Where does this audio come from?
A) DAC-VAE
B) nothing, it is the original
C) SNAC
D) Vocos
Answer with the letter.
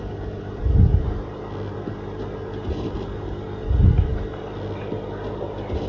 B